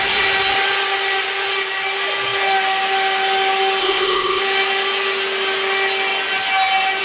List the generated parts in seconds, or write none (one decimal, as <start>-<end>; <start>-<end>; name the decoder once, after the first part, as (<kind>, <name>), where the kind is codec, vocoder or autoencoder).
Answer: 3.8-4.4 (codec, ZipCodec)